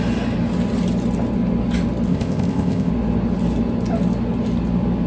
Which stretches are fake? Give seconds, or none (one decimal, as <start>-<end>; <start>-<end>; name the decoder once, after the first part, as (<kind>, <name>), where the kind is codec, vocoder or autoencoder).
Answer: 2.1-2.9 (codec, ZipCodec)